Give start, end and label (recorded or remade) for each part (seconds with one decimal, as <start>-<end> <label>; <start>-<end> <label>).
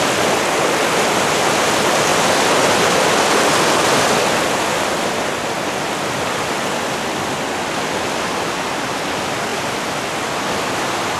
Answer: 0.0-9.5 recorded; 9.5-10.3 remade; 10.3-11.2 recorded